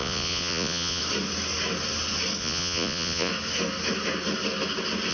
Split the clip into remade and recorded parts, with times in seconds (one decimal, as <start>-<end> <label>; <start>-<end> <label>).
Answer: 0.0-1.0 remade; 1.0-2.4 recorded; 2.4-3.3 remade; 3.3-5.1 recorded